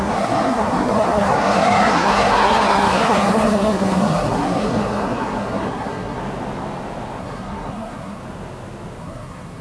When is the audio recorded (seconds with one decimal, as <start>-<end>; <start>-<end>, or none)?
6.2-7.2; 8.2-9.0